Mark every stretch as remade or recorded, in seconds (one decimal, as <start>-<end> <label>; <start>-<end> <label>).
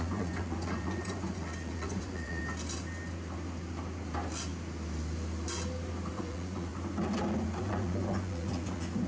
0.0-2.4 remade; 2.4-6.1 recorded; 6.1-6.7 remade; 6.7-7.6 recorded; 7.6-9.1 remade